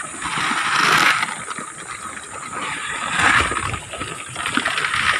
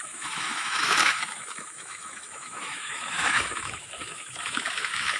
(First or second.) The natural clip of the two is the first